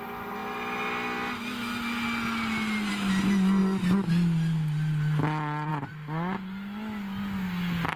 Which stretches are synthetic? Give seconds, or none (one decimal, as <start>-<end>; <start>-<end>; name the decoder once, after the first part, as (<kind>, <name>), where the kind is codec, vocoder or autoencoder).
none